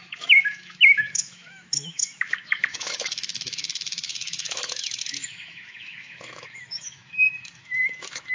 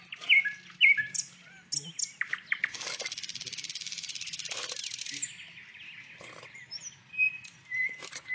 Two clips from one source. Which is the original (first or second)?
second